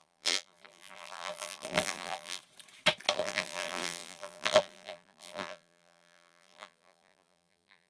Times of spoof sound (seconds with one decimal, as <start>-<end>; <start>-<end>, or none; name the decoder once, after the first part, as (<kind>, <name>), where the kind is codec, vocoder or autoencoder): 0.0-2.4 (vocoder, BigVGAN v2); 3.1-7.9